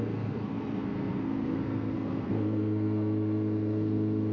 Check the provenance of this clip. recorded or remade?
remade